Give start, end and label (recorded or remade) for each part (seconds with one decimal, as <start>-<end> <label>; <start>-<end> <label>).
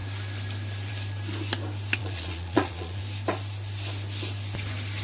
0.0-2.0 recorded; 2.0-3.0 remade; 3.0-5.0 recorded